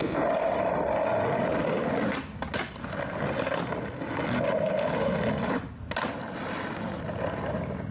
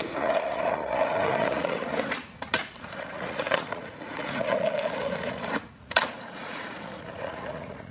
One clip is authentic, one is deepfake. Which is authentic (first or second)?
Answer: first